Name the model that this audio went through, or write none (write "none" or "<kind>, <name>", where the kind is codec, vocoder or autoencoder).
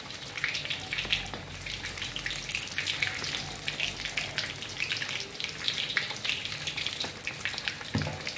none